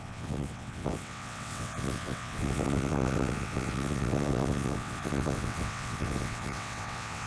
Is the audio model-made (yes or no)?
yes